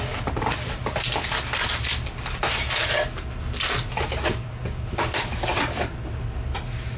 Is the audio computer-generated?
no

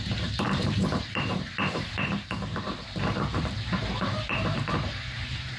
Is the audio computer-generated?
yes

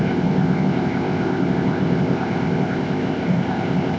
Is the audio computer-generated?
yes